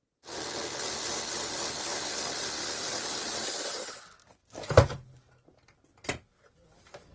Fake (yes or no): no